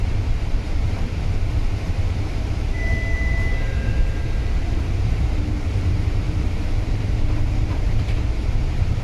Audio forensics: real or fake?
fake